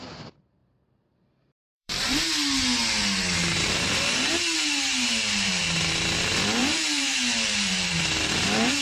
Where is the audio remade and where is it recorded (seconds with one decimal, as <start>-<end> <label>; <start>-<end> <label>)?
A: 0.0-0.6 recorded; 0.6-2.3 remade; 2.3-3.4 recorded; 3.4-5.9 remade; 5.9-6.6 recorded; 6.6-8.0 remade; 8.0-8.8 recorded